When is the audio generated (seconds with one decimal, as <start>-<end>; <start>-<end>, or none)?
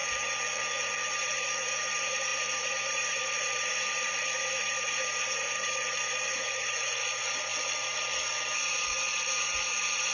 1.1-7.5; 8.7-10.1